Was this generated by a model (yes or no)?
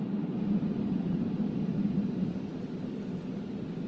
no